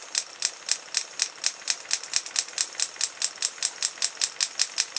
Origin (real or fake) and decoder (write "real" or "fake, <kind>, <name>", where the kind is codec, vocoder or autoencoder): real